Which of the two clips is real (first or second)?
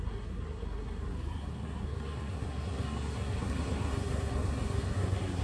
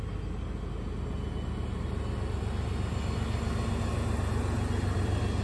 second